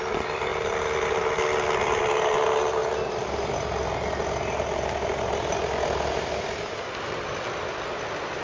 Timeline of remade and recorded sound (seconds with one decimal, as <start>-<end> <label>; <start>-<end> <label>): 0.0-8.4 recorded